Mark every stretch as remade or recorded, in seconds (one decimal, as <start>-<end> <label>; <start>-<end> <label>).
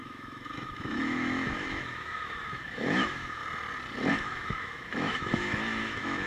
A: 0.0-3.4 remade; 3.4-4.1 recorded; 4.1-6.3 remade